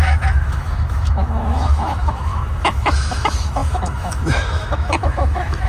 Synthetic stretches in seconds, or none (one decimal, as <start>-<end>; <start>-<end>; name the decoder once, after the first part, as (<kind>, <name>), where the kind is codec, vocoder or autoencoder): 0.0-5.7 (autoencoder, DAC-VAE)